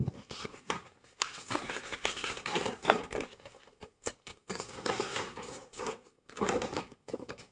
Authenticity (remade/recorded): remade